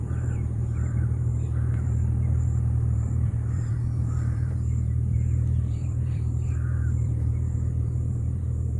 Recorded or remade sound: remade